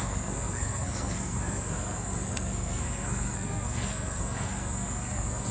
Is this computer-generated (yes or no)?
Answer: yes